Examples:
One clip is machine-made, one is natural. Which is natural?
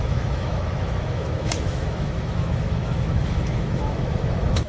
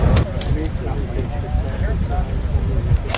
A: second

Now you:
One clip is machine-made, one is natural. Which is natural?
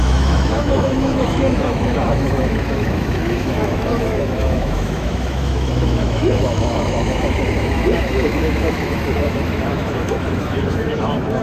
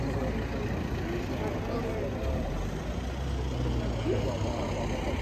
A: second